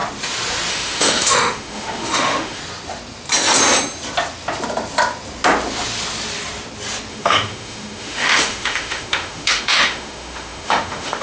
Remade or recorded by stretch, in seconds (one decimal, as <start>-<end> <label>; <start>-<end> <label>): 0.0-0.7 recorded; 0.7-2.6 remade; 2.6-7.1 recorded; 7.1-11.2 remade